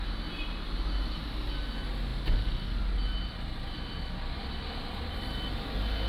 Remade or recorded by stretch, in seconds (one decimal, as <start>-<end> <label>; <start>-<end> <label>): 0.0-6.1 recorded